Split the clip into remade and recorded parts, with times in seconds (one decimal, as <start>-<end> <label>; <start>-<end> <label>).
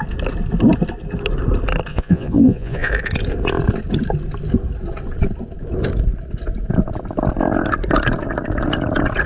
0.0-1.9 recorded; 1.9-2.9 remade; 2.9-9.3 recorded